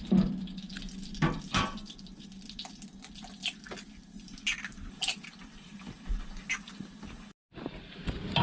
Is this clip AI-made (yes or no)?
no